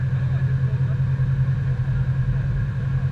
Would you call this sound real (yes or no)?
yes